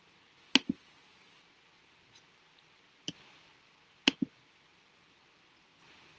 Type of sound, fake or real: real